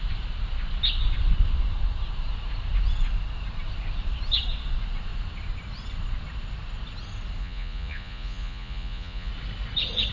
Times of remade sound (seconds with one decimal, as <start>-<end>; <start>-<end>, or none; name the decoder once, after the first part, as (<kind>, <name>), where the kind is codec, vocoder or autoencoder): 7.4-9.3 (vocoder, Vocos)